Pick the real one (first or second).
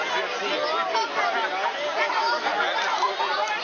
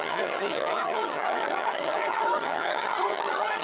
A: first